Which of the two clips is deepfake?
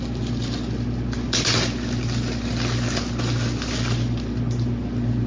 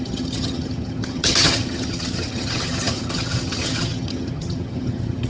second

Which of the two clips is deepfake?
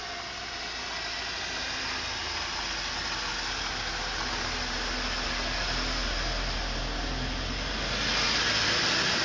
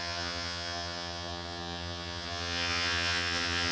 second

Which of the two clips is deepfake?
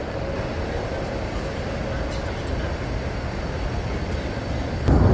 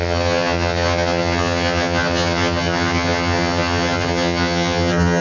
second